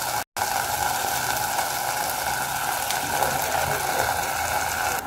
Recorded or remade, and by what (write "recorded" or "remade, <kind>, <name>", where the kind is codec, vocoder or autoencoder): recorded